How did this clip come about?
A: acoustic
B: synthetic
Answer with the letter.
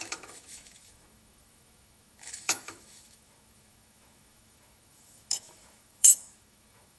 B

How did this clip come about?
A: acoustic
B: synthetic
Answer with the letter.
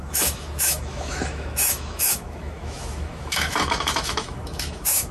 B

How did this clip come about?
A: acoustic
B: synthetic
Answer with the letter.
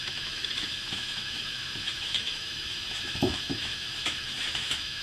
B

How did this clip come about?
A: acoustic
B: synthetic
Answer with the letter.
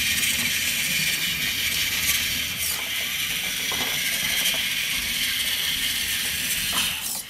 A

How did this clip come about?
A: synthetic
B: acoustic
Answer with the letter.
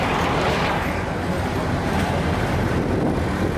B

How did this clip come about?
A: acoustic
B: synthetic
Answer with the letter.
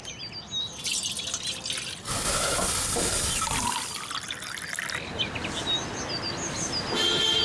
A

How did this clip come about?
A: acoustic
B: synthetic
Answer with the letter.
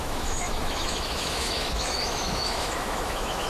B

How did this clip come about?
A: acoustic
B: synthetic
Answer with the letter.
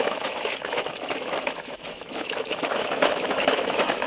B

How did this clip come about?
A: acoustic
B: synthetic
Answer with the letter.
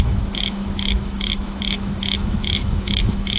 B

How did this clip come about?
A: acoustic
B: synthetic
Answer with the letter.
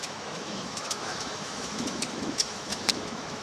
B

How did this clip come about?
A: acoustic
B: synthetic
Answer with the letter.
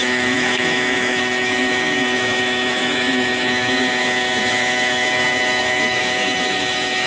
B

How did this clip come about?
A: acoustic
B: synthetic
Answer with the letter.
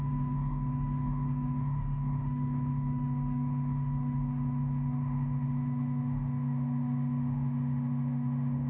B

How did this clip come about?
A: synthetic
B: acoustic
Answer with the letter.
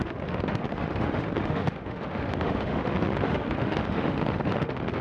A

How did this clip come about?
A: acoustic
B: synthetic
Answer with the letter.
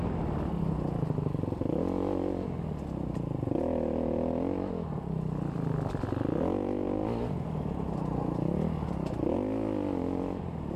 A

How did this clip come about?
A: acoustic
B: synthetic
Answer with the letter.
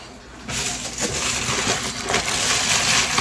A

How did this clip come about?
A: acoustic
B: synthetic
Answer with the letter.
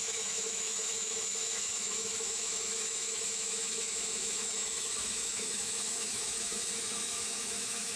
B